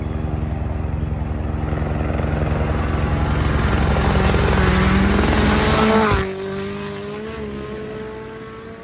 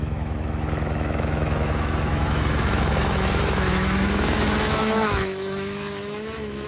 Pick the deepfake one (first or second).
second